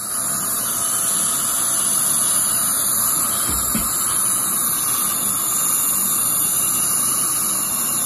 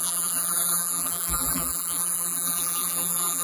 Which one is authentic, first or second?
first